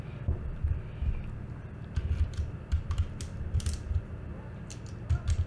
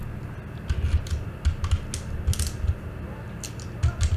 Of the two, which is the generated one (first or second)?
first